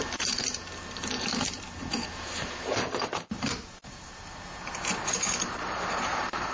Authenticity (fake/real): fake